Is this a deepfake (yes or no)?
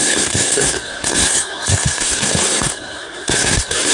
yes